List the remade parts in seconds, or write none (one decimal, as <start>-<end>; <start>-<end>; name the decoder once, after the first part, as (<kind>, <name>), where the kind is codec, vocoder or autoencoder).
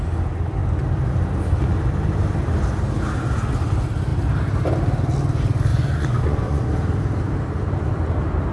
5.7-6.6 (vocoder, Vocos)